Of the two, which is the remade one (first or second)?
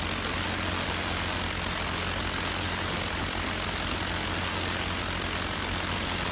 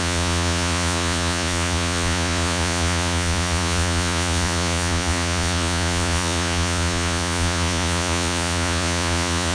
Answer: second